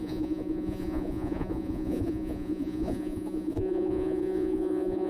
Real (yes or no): no